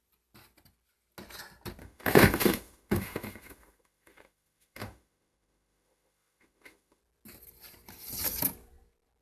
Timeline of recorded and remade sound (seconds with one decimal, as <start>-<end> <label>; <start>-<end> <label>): 0.0-1.8 recorded; 1.8-7.0 remade; 7.0-9.2 recorded